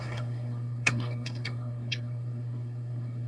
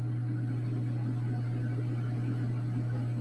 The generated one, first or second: first